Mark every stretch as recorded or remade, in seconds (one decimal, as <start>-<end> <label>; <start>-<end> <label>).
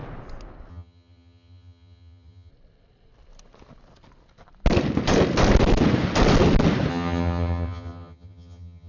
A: 0.0-0.7 recorded; 0.7-2.5 remade; 2.5-6.9 recorded; 6.9-8.9 remade